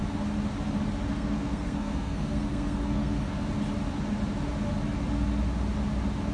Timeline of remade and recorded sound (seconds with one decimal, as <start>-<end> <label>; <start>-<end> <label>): 0.0-1.1 recorded; 1.1-3.5 remade; 3.5-6.3 recorded